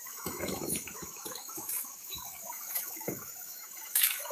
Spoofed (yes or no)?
yes